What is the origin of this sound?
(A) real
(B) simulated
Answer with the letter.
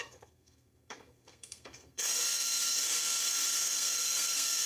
B